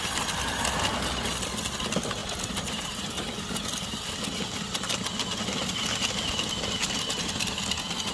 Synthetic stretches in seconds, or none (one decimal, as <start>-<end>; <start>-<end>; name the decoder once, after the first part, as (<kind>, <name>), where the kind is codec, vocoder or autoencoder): none